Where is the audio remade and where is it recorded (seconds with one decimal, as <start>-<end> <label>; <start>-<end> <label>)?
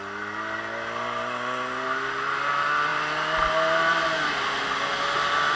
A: 0.0-5.6 recorded